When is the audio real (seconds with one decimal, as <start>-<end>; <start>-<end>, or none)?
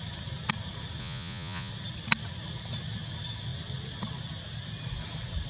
0.0-1.0; 1.7-5.5